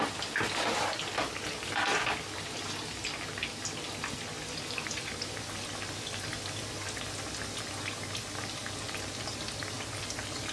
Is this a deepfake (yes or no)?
no